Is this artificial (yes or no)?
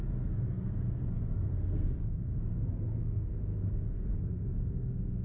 yes